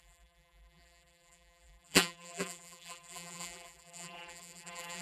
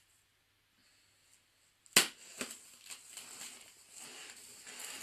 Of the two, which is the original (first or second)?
second